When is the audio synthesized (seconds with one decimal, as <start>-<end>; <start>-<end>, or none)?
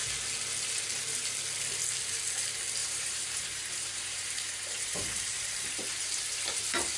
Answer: 2.8-6.6